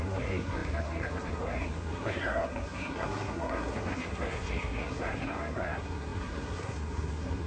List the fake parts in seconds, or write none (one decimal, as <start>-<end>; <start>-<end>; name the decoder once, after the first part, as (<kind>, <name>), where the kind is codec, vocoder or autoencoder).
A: 0.0-7.5 (codec, SNAC)